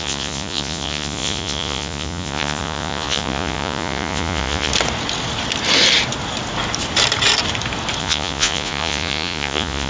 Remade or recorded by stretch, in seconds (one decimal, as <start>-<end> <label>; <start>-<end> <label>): 0.0-4.7 remade; 4.7-8.0 recorded; 8.0-9.9 remade